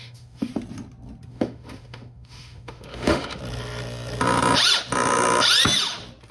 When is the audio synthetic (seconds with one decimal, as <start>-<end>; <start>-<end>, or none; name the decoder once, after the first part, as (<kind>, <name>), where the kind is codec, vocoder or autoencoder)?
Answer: 0.0-0.5 (autoencoder, DAC-VAE); 1.3-3.4